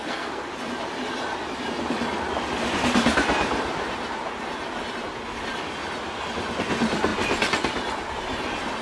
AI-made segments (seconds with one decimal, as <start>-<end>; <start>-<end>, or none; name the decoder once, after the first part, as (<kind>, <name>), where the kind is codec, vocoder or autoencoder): 0.0-0.5 (codec, SNAC)